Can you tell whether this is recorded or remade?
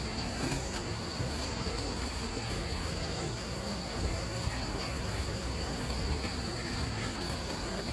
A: remade